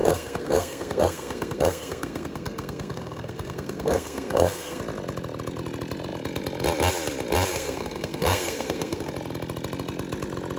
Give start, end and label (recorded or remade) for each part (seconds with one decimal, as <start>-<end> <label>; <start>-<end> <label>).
0.0-4.8 remade; 4.8-7.5 recorded; 7.5-9.1 remade; 9.1-10.6 recorded